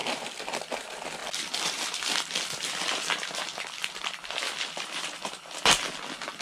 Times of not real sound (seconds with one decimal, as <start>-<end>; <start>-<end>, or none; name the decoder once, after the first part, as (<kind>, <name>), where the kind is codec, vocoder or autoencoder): 0.0-0.6 (vocoder, BigVGAN v2); 1.2-5.0